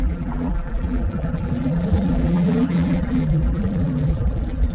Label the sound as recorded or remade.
remade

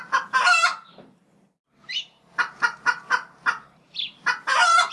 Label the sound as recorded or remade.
recorded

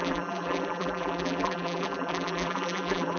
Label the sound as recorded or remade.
remade